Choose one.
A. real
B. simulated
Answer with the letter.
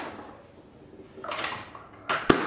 A